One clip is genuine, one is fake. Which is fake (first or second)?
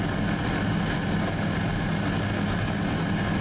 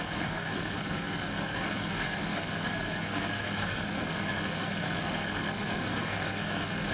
second